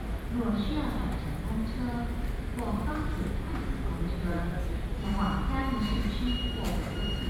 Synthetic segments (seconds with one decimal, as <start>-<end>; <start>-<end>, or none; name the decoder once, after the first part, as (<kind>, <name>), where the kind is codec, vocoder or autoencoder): 2.5-3.5 (vocoder, BigVGAN v2)